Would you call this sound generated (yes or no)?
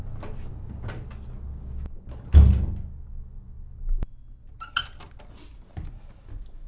no